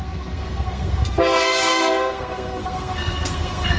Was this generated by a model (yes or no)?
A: yes